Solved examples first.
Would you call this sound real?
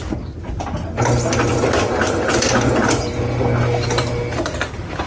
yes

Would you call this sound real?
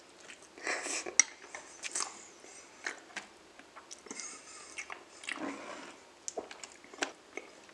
yes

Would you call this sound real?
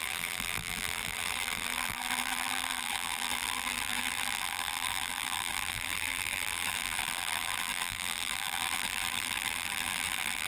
no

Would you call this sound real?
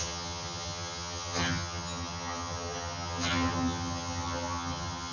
no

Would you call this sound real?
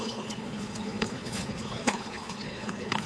no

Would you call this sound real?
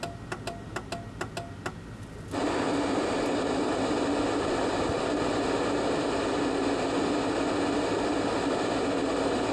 yes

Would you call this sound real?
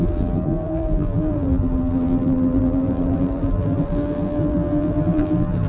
no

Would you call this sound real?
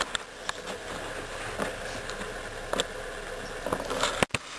yes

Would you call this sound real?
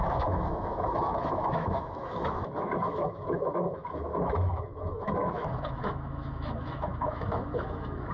no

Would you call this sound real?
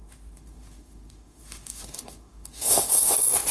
no